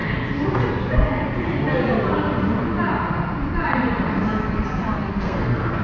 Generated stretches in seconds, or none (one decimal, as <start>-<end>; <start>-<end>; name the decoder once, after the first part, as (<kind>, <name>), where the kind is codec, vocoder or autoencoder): 5.1-5.8 (codec, SNAC)